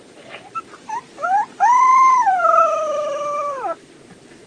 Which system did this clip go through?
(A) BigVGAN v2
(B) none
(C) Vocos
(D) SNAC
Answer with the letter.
A